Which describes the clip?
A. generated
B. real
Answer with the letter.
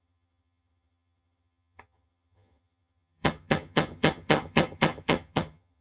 A